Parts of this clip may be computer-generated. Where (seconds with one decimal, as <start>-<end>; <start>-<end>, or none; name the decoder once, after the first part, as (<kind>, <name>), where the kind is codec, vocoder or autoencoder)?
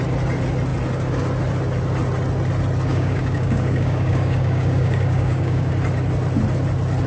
2.9-5.7 (codec, DAC)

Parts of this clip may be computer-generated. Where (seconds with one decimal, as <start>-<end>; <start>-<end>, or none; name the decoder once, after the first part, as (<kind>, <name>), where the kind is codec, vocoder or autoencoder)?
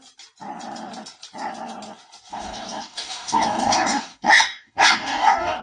2.3-5.6 (codec, DAC)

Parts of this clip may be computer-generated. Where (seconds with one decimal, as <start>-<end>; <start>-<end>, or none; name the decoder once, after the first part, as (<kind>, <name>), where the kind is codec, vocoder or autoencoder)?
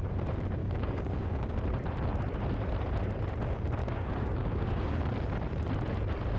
0.6-1.5 (codec, DAC); 3.8-5.0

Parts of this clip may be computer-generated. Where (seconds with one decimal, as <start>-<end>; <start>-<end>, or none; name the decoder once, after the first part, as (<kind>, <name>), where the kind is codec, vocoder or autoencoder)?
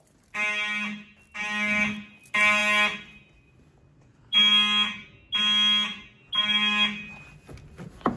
none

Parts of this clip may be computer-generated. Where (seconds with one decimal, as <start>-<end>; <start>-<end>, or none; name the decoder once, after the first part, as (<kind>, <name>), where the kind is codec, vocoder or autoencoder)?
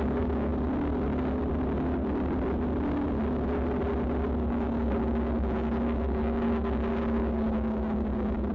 0.0-0.5 (codec, DAC); 4.5-8.5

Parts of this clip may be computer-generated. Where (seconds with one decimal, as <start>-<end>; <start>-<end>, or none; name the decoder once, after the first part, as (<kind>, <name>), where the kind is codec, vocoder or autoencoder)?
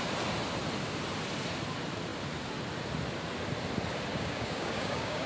4.1-5.3 (codec, DAC)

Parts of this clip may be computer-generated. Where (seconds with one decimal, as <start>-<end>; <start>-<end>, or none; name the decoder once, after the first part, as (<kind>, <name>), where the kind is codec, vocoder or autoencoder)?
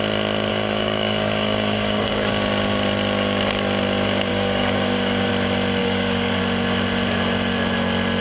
0.5-2.3 (codec, DAC); 4.3-5.3; 5.8-6.4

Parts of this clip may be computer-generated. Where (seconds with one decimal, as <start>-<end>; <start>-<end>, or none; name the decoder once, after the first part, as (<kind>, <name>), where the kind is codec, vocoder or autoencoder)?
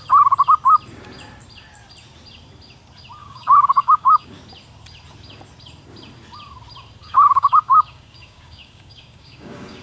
3.2-4.4 (codec, DAC); 7.0-9.8